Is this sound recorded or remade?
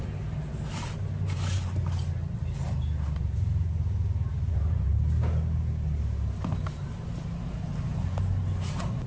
recorded